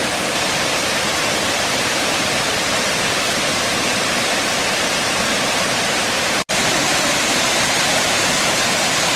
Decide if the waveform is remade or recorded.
remade